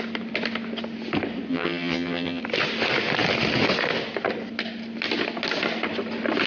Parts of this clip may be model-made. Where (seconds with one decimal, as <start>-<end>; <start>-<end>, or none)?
1.5-2.4